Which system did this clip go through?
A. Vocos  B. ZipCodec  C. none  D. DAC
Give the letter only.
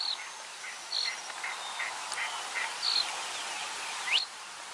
C